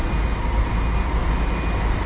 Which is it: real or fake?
real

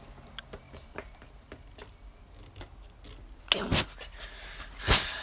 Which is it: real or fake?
real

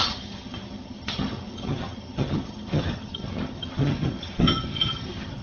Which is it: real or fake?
fake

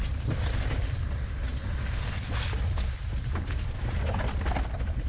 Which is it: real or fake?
real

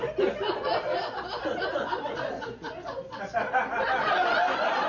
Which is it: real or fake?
real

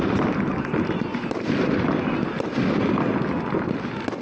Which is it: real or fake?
real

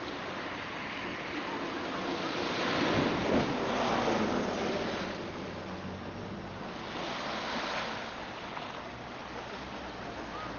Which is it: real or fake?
real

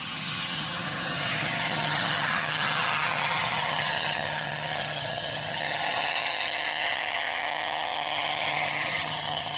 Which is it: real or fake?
fake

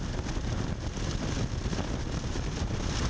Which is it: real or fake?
real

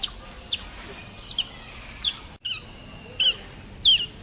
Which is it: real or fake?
real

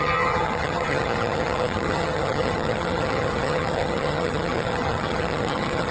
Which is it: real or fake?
fake